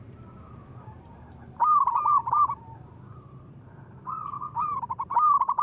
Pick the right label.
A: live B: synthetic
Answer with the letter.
B